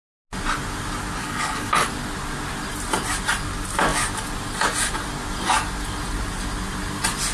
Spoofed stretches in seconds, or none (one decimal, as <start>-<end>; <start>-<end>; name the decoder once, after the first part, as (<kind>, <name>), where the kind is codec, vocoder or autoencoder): 1.2-1.7 (codec, HILCodec)